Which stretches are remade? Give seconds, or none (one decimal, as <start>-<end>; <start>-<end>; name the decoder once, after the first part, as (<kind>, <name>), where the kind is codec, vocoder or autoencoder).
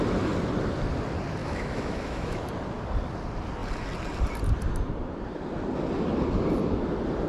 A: 1.4-2.5 (autoencoder, DAC-VAE)